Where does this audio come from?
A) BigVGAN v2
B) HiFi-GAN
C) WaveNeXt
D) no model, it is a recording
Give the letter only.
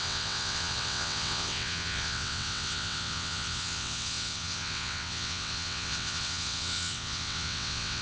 C